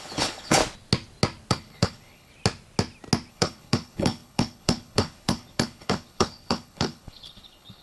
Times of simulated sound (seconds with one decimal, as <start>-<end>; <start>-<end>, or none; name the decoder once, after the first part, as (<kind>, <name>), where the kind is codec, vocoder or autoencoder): 0.0-0.6 (codec, HILCodec); 1.5-2.3; 3.3-7.8